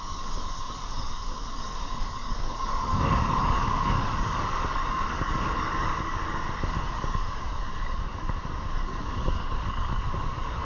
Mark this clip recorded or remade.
remade